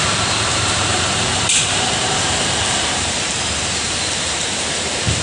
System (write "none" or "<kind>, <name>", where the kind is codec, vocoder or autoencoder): vocoder, BigVGAN v2